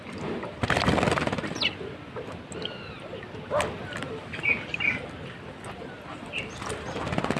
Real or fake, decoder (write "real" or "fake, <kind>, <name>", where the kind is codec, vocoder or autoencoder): real